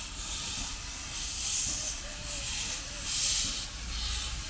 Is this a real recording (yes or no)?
yes